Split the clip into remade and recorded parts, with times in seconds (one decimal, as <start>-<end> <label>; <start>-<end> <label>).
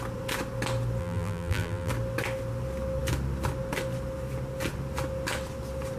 0.0-1.0 recorded; 1.0-1.9 remade; 1.9-6.0 recorded